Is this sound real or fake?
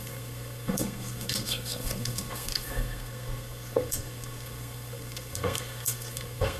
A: fake